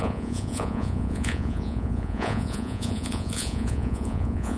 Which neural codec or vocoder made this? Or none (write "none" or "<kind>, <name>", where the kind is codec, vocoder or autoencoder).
vocoder, Vocos